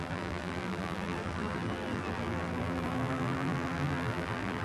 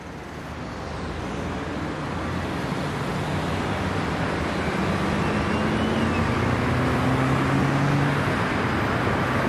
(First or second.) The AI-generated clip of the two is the first